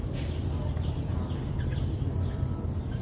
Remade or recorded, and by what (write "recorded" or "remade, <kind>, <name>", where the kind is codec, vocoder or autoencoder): recorded